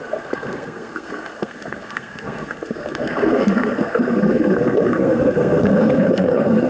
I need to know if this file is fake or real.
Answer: fake